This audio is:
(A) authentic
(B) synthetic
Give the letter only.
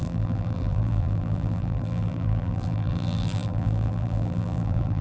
B